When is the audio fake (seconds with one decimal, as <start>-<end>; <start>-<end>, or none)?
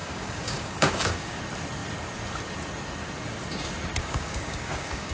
0.0-1.4; 4.0-5.1